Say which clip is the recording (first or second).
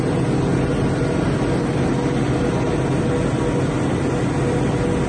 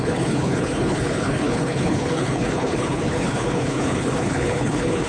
first